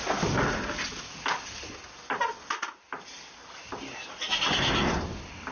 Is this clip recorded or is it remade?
recorded